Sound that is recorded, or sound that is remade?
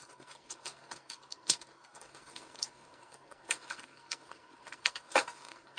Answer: remade